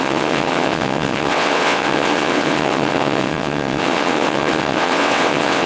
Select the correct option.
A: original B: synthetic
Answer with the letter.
B